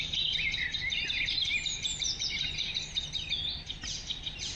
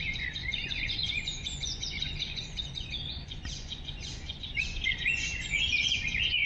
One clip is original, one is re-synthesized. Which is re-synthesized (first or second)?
second